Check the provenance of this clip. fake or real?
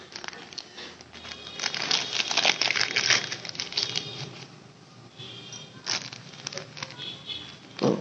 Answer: real